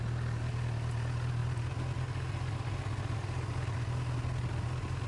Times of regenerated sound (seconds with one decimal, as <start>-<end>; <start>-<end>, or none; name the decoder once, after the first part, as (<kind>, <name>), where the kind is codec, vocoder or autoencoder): none